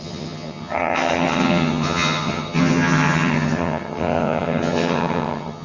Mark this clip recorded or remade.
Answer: remade